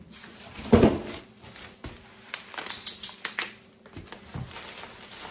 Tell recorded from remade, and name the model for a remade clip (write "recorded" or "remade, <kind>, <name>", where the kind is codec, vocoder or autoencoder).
recorded